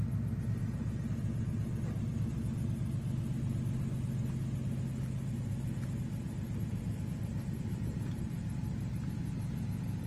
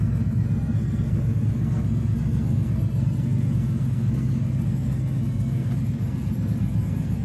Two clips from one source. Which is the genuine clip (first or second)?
first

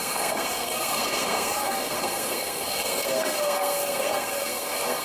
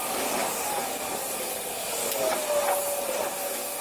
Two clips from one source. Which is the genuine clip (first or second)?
second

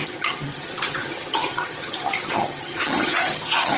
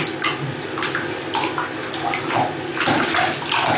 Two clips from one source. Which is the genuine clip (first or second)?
second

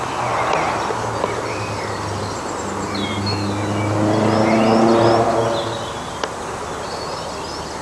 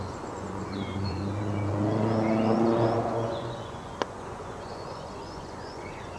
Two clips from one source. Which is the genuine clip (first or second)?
first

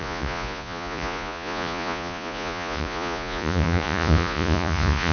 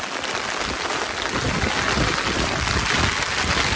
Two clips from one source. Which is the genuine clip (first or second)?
second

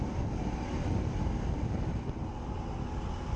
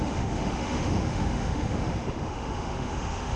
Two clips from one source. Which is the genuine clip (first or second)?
first